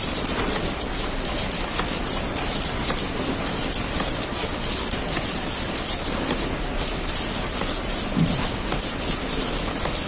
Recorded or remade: recorded